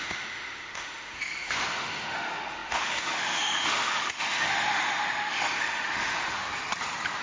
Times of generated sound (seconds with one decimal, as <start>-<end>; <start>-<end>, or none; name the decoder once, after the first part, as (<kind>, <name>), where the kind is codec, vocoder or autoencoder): 0.0-6.4 (autoencoder, DAC-VAE)